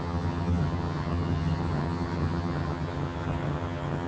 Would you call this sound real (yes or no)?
no